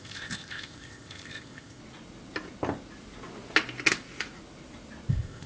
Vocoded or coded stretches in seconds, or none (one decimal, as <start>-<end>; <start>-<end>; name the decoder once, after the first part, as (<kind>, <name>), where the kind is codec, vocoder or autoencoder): 0.0-1.8 (codec, ZipCodec); 5.1-5.5

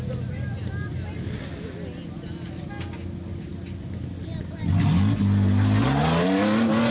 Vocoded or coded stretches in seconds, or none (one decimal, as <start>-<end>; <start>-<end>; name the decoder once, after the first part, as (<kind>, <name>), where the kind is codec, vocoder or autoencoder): none

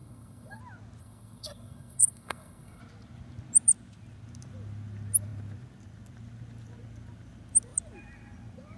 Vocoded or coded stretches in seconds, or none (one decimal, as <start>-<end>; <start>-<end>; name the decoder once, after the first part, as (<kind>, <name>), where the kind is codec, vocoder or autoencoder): 0.0-0.6 (codec, SNAC); 1.0-2.8

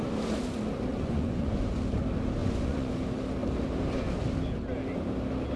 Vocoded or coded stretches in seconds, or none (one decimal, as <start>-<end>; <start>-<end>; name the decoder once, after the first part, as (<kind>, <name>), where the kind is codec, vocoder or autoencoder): 0.9-1.7 (vocoder, Vocos); 2.4-2.9

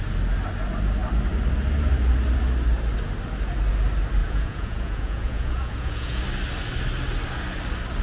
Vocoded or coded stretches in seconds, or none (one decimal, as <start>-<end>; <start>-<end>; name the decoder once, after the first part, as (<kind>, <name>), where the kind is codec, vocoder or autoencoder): 4.2-6.2 (vocoder, Vocos)